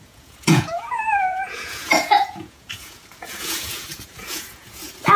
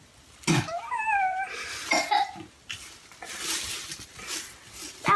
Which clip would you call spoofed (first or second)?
first